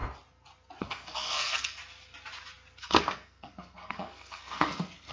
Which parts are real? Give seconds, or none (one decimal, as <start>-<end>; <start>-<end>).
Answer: 0.0-0.8; 1.8-2.8

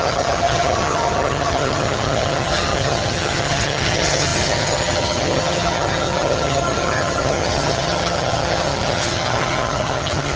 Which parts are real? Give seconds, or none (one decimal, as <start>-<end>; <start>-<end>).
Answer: none

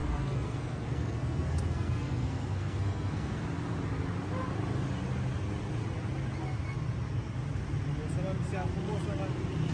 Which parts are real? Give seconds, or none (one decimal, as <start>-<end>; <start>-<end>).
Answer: 3.4-9.7

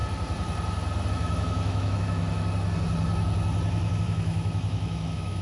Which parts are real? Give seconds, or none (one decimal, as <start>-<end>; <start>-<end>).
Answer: 0.0-1.1; 2.2-4.0

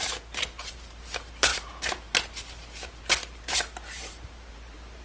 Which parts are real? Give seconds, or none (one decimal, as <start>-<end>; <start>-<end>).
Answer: none

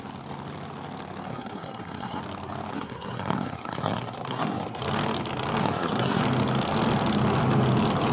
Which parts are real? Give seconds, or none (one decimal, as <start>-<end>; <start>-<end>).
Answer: 0.0-1.3; 2.2-2.7; 4.8-5.6; 6.2-8.1

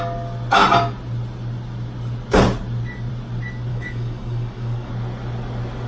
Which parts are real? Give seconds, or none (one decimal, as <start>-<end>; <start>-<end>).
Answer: 0.0-3.7; 4.9-5.9